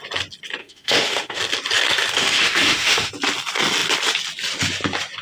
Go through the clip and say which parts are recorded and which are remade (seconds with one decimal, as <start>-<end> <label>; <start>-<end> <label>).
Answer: 0.0-0.6 recorded; 0.6-1.4 remade; 1.4-2.2 recorded; 2.2-3.1 remade; 3.1-5.2 recorded